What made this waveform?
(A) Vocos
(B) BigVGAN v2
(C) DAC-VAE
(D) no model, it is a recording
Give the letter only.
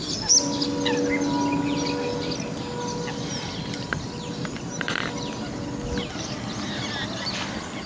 D